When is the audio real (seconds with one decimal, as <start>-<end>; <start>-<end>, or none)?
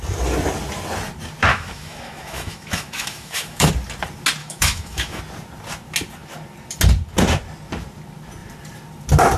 0.0-1.5; 3.7-4.4; 5.2-9.4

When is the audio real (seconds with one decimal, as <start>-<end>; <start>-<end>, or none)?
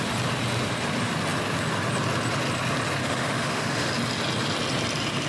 0.0-3.0; 3.9-5.3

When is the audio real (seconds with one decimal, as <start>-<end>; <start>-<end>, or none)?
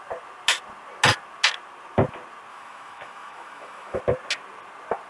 0.0-2.5; 4.0-5.1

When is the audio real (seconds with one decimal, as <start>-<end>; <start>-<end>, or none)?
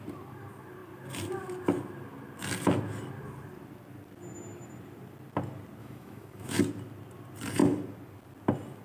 0.0-5.8; 6.6-8.8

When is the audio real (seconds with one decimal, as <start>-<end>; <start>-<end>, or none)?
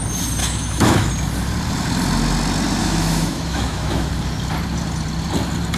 0.0-0.4; 1.1-2.8; 4.1-5.8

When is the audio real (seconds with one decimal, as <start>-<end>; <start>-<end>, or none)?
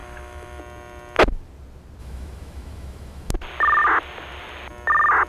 0.6-2.0; 3.3-5.3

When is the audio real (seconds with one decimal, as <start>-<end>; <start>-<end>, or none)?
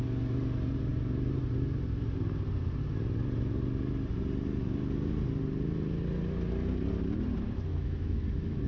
0.0-7.7